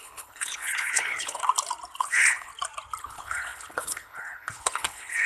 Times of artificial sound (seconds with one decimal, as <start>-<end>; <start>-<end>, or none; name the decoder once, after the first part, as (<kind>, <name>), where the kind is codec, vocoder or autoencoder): 0.0-1.4 (codec, HILCodec); 2.0-2.5; 3.0-5.3